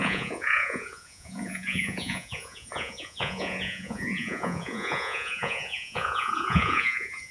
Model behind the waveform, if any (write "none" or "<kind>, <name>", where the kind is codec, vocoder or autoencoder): vocoder, Vocos